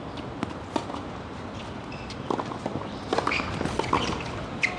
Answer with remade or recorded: recorded